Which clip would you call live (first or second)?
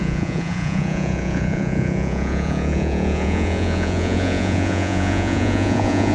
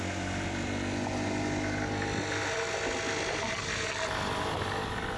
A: second